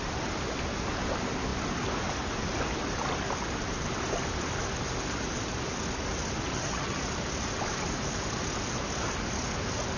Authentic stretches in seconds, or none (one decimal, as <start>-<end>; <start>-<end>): 0.0-6.5; 7.0-10.0